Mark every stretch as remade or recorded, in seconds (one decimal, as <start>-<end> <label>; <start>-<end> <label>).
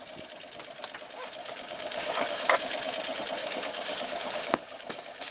0.0-1.4 recorded; 1.4-2.5 remade; 2.5-3.4 recorded; 3.4-5.3 remade